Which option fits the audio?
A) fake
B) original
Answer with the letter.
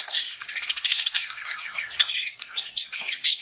A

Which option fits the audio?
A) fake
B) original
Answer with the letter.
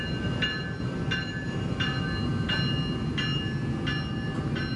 B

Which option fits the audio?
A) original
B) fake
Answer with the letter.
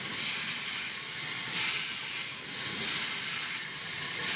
A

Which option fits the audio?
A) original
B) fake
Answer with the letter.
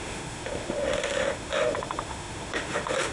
B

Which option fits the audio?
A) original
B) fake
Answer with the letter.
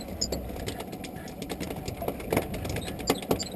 A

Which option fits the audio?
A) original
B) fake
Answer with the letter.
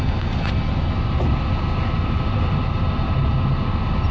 A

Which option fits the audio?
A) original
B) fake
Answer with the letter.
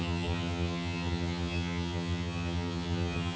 B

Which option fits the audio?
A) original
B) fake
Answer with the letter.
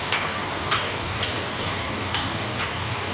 B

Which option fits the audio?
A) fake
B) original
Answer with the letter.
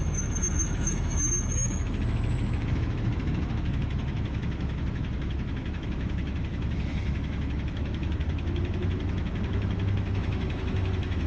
A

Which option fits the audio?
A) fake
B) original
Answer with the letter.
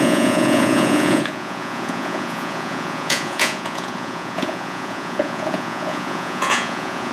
A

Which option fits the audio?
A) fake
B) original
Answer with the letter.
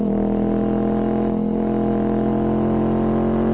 B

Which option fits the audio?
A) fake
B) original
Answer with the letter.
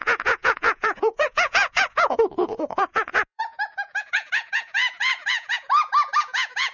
A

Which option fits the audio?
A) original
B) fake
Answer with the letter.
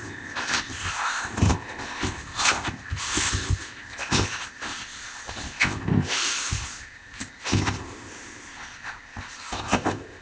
B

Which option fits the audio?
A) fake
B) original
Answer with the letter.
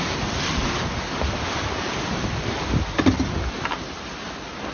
B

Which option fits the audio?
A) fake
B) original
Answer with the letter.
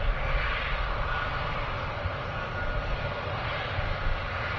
B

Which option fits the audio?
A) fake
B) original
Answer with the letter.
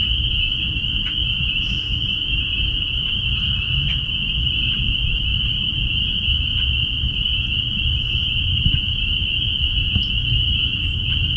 B